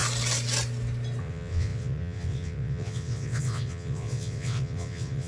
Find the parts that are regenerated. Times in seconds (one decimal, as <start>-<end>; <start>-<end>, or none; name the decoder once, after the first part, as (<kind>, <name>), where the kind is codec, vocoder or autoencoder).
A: 1.2-5.3 (vocoder, WaveNeXt)